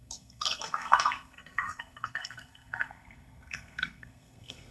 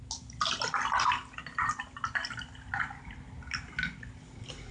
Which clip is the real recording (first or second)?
second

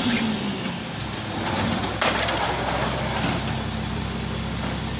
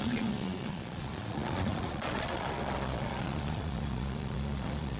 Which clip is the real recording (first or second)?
first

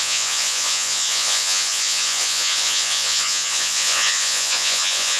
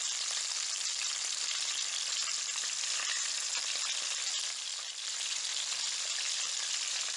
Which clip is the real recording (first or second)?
second